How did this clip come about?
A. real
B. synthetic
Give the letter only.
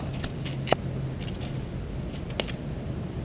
A